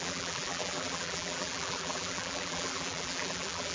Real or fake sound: fake